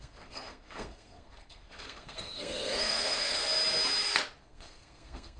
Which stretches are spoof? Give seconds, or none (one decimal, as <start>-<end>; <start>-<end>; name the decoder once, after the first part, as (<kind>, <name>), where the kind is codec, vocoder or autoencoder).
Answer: 0.0-3.4 (codec, SNAC); 4.4-5.4